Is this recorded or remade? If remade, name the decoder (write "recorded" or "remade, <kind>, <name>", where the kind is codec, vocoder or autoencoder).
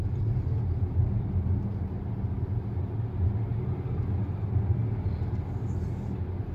recorded